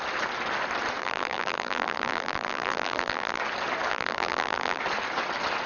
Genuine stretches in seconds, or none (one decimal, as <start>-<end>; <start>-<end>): 0.0-1.0; 3.4-3.9; 4.8-5.7